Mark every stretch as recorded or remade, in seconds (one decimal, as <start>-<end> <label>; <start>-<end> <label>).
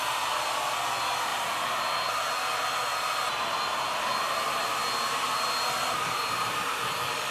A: 0.0-7.3 recorded